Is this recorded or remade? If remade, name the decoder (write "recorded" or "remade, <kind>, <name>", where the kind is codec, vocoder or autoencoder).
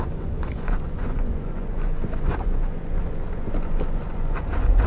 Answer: remade, vocoder, Vocos